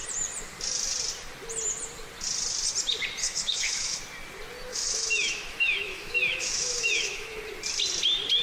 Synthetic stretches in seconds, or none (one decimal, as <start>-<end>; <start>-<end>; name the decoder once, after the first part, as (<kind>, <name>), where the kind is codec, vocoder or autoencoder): 3.2-4.0 (autoencoder, DAC-VAE); 4.7-7.4